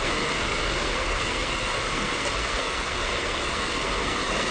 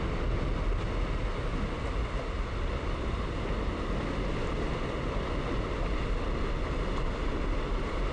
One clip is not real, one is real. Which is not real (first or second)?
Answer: first